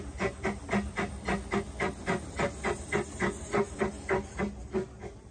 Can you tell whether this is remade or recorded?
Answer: recorded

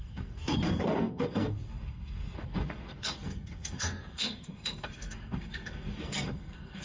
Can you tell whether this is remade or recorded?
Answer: remade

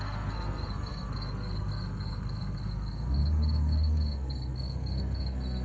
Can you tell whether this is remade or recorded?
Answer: remade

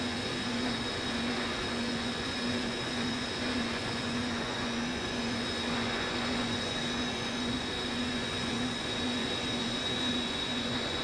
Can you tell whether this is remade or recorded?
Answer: remade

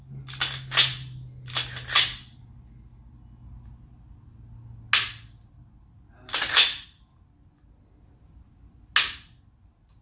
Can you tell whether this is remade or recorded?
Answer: recorded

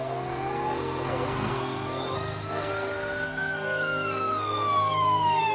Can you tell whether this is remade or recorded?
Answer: remade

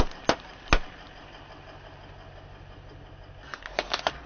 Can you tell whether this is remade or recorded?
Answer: recorded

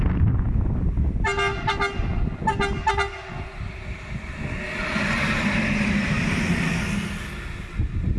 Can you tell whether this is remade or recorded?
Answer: recorded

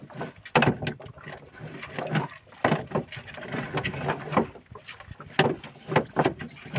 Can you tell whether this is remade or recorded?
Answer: recorded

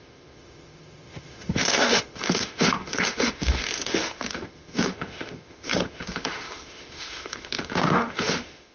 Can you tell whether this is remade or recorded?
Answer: remade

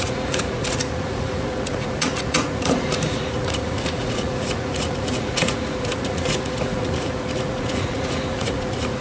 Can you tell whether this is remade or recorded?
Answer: remade